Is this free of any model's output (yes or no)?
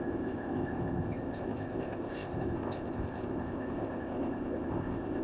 no